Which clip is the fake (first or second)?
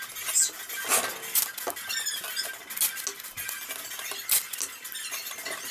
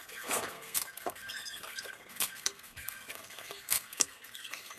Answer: second